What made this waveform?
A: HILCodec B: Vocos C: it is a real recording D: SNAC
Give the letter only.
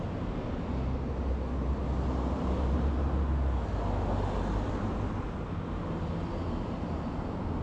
C